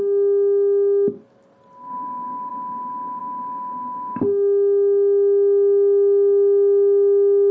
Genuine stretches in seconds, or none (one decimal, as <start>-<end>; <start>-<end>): 0.0-7.5